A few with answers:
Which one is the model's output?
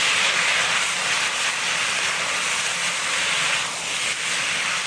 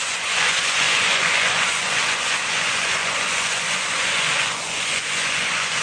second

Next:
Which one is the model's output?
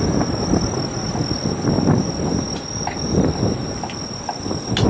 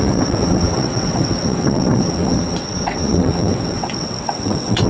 second